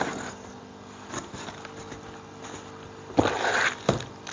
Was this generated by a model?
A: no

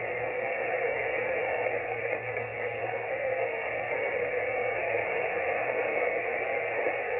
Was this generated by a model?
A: yes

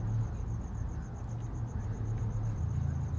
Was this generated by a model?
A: no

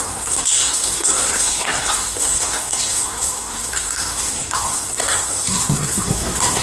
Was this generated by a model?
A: yes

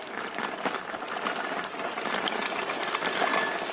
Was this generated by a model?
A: no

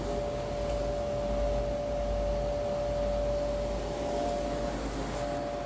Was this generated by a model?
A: no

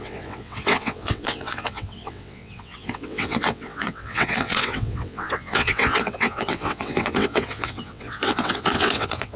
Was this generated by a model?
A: yes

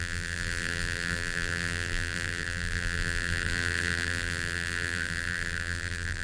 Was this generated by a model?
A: yes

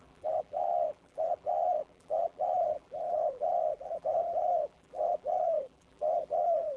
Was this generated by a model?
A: yes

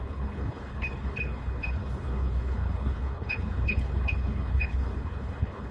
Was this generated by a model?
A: yes